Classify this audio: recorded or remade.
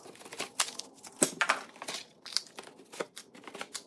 recorded